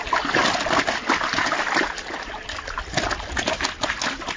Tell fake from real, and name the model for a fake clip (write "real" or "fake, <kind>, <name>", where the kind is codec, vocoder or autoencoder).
real